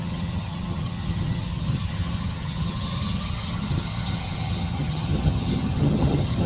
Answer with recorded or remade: remade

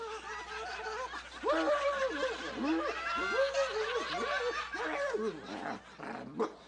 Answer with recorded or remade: recorded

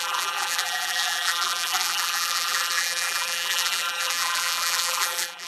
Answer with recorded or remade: remade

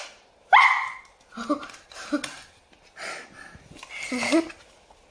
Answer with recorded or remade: recorded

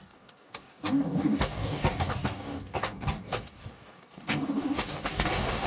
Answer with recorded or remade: remade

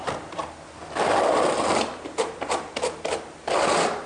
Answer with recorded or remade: remade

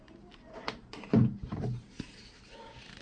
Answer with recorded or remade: remade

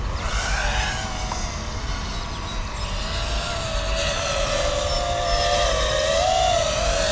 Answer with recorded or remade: recorded